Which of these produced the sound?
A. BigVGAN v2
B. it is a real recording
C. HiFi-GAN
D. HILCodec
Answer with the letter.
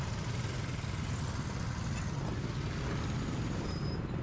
B